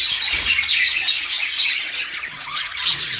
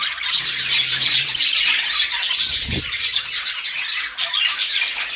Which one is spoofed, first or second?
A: first